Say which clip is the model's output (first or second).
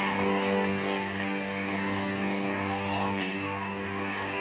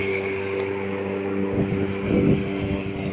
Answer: first